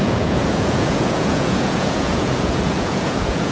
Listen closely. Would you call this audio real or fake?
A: fake